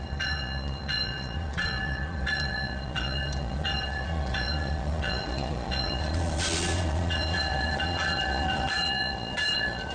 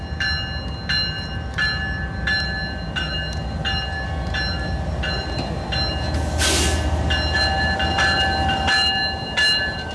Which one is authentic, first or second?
second